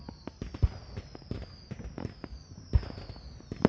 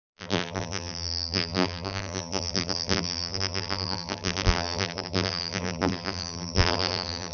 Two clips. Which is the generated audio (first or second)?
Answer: second